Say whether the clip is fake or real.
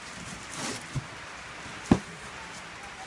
real